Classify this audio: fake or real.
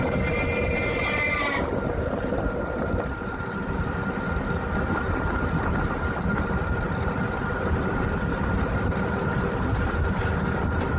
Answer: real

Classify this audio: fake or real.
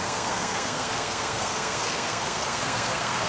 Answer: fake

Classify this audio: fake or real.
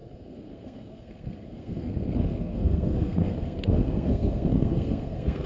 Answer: fake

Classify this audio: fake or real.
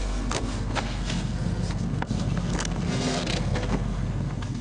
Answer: fake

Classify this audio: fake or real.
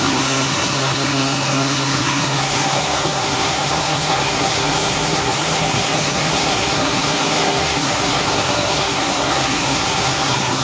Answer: fake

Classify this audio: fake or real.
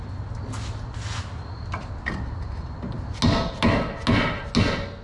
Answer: real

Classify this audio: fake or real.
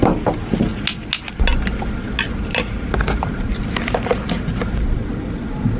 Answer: real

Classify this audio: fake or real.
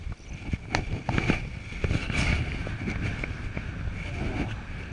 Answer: real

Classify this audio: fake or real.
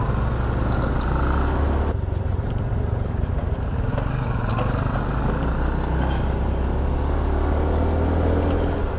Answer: real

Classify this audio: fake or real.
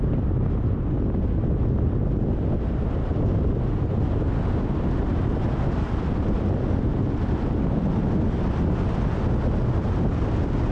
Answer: real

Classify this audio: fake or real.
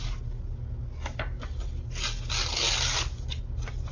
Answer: real